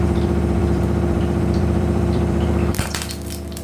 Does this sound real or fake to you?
fake